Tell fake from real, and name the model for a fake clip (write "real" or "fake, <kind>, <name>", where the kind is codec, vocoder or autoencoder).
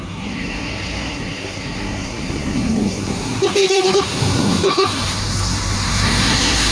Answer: fake, codec, SNAC